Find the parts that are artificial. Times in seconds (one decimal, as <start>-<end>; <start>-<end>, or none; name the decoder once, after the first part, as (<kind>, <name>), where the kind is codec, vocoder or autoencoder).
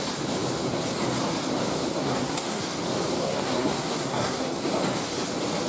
1.9-2.6 (codec, SNAC); 3.2-4.7